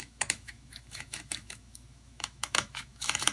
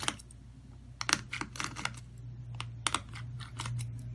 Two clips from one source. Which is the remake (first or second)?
first